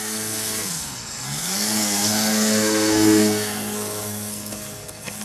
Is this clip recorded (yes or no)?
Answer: no